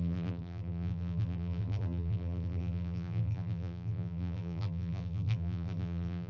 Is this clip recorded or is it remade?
remade